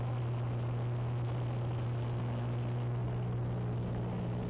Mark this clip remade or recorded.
recorded